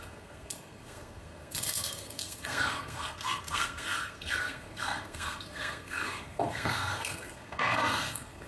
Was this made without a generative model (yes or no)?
no